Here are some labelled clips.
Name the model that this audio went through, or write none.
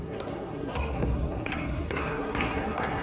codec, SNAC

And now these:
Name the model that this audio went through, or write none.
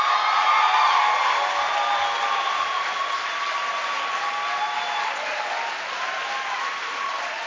none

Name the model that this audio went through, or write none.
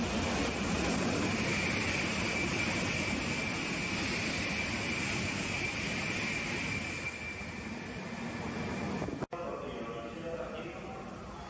none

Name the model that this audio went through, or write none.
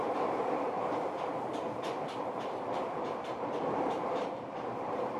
vocoder, BigVGAN v2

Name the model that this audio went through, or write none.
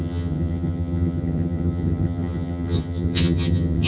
vocoder, HiFi-GAN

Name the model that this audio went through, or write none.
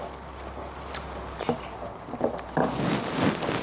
none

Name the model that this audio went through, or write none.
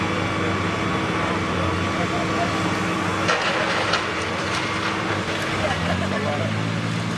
none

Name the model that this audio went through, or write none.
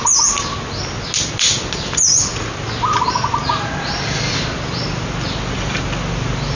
none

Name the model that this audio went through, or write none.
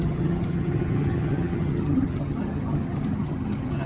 vocoder, HiFi-GAN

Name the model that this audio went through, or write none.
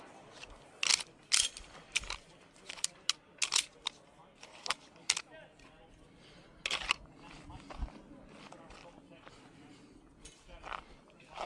none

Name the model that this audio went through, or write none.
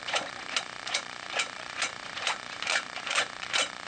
vocoder, Vocos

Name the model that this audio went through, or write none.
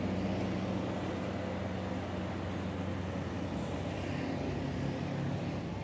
none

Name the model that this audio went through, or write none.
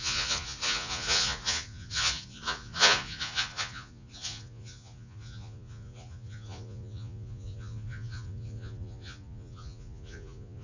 vocoder, Vocos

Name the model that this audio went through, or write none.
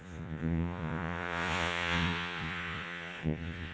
vocoder, Vocos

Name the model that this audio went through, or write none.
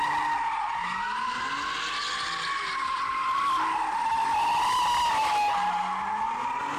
none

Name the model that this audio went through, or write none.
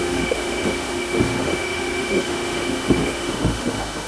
autoencoder, DAC-VAE